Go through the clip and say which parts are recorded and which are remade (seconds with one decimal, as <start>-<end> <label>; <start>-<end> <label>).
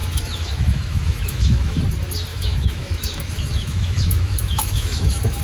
0.0-1.8 remade; 1.8-2.3 recorded; 2.3-5.4 remade